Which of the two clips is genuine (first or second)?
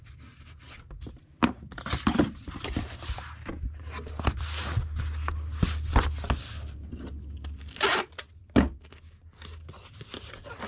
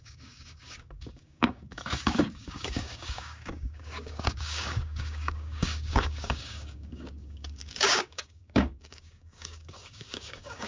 first